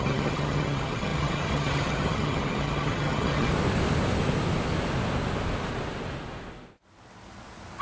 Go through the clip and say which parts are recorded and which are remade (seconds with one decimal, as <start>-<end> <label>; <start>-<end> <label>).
0.0-3.5 remade; 3.5-7.8 recorded

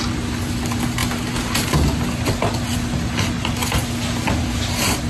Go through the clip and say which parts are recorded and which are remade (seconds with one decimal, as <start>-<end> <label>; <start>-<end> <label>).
0.0-5.1 recorded

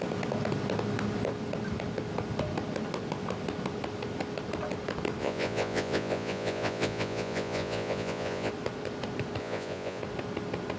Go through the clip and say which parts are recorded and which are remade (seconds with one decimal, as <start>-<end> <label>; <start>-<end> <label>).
0.0-5.2 recorded; 5.2-8.5 remade; 8.5-9.4 recorded; 9.4-10.0 remade; 10.0-10.8 recorded

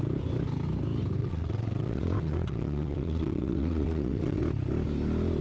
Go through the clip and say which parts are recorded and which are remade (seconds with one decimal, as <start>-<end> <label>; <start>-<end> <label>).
0.0-1.2 recorded; 1.2-4.4 remade; 4.4-5.4 recorded

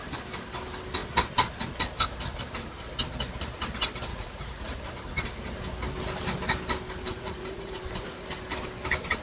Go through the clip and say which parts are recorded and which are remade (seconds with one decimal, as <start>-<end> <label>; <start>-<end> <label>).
0.0-4.1 recorded; 4.1-4.8 remade; 4.8-7.1 recorded; 7.1-7.8 remade; 7.8-9.2 recorded